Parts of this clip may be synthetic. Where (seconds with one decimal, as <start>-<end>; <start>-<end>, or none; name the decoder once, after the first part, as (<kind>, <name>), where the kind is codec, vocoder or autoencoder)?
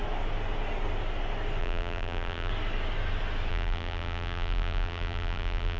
1.6-2.5 (vocoder, BigVGAN v2); 3.5-5.8